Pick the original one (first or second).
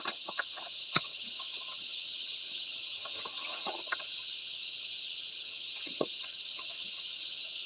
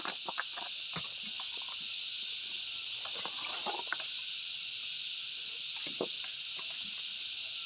second